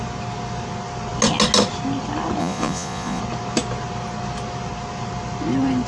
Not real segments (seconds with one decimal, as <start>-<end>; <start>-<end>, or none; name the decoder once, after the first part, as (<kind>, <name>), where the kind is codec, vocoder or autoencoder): 2.4-3.2 (vocoder, Vocos)